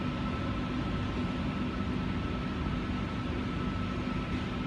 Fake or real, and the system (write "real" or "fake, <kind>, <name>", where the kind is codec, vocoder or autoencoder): real